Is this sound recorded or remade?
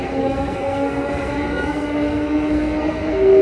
remade